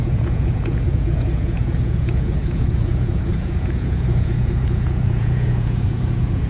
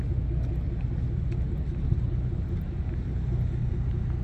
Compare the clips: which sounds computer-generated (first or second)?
first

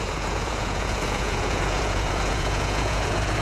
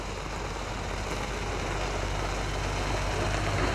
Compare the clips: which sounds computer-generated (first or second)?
first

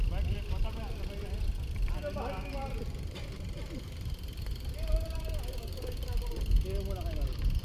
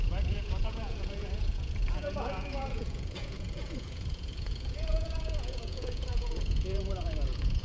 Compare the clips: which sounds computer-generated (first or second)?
second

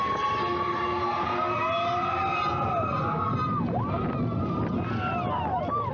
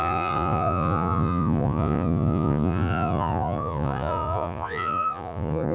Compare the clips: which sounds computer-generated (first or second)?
second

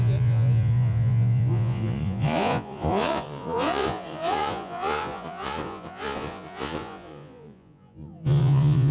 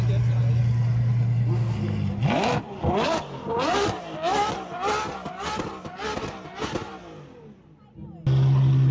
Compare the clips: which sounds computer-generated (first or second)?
first